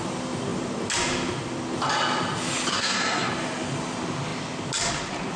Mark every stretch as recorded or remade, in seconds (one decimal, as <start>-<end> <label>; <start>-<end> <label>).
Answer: 0.0-2.7 recorded; 2.7-3.3 remade; 3.3-5.4 recorded